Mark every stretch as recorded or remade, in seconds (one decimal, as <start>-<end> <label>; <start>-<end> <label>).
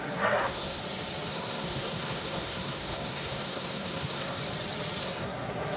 0.0-0.8 remade; 0.8-1.3 recorded; 1.3-4.4 remade; 4.4-5.0 recorded; 5.0-5.8 remade